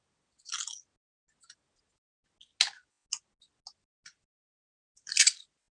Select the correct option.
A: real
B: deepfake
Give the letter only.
A